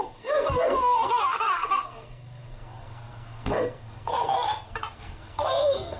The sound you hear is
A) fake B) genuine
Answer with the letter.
A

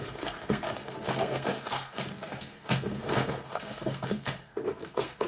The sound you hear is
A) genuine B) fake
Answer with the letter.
B